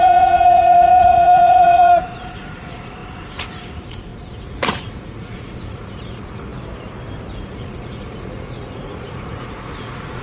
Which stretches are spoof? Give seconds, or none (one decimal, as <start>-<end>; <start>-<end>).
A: 0.0-6.5; 7.4-10.2